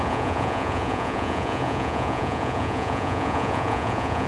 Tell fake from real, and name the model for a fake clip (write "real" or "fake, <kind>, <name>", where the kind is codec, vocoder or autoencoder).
fake, vocoder, Vocos